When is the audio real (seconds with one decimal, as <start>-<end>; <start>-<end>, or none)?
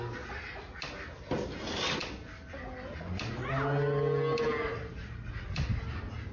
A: 0.0-6.3